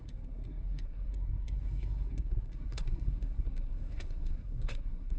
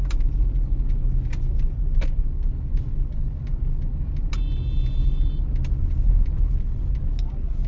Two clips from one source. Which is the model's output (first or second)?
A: first